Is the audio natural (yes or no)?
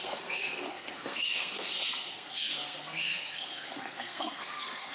no